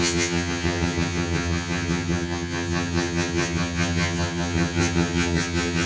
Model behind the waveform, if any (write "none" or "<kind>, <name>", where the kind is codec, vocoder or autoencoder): vocoder, HiFi-GAN